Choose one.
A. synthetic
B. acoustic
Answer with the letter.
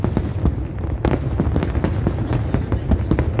B